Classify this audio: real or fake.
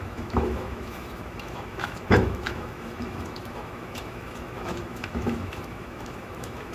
fake